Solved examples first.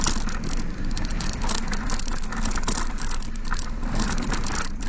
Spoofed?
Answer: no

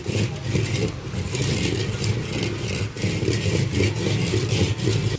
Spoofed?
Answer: no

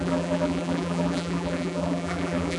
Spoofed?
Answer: yes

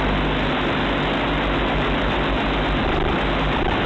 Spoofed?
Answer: no